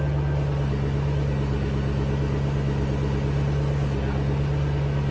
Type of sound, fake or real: real